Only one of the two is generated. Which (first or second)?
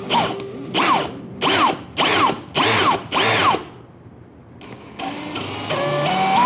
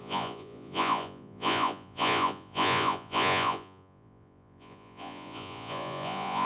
second